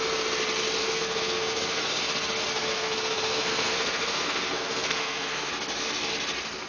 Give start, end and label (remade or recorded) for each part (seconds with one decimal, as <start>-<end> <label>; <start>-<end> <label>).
0.0-0.8 recorded; 0.8-1.9 remade; 1.9-2.6 recorded; 2.6-5.5 remade; 5.5-6.7 recorded